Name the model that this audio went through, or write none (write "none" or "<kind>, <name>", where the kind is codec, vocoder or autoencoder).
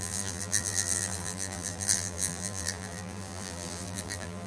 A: vocoder, BigVGAN v2